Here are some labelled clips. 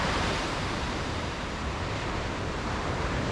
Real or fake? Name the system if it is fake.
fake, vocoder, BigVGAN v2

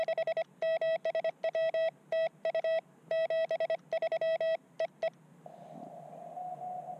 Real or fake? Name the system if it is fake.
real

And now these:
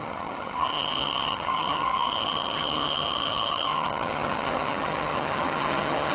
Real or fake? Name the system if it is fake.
fake, vocoder, HiFi-GAN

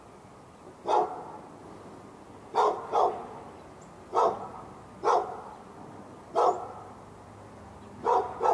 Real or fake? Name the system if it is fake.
real